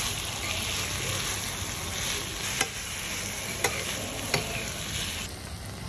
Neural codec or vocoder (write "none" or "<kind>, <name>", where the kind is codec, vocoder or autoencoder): none